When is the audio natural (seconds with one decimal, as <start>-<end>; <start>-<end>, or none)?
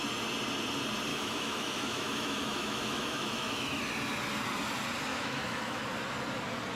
0.0-1.1; 3.8-5.1; 5.8-6.8